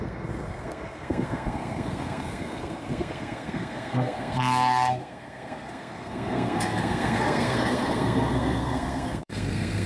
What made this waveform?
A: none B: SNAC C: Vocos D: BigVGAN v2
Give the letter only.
B